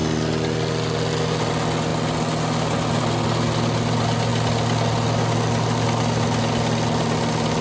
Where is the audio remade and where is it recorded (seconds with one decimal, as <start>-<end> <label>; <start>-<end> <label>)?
0.0-7.6 recorded